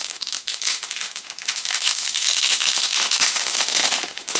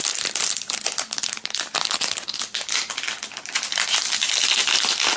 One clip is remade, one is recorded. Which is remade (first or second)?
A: first